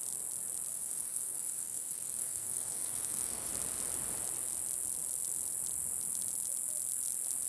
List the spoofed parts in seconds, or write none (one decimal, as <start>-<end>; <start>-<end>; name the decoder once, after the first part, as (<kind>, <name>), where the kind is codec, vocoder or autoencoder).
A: 0.7-3.5 (codec, SNAC)